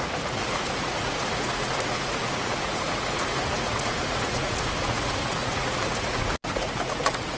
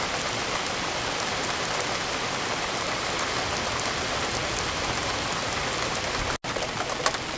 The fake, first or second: first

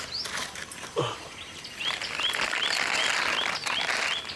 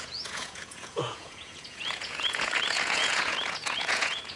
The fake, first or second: second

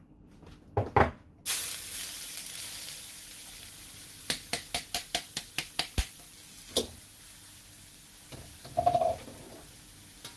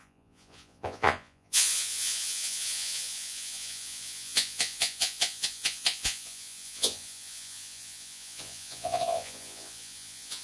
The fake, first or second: second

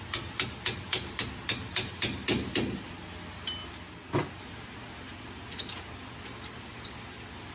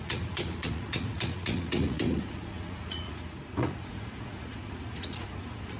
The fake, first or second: second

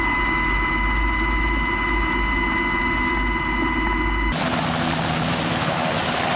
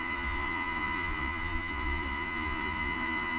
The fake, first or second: second